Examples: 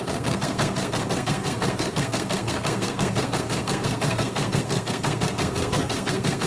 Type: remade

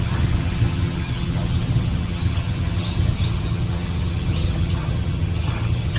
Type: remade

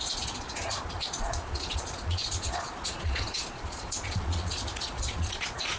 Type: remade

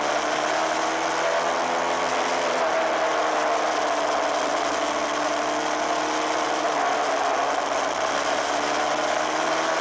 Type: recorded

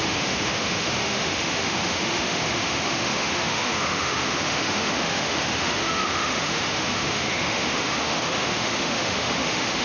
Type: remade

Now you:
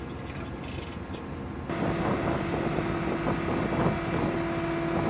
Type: recorded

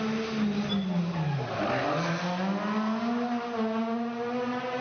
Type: recorded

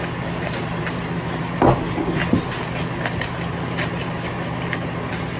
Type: recorded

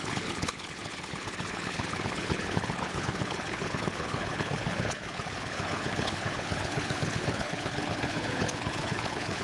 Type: remade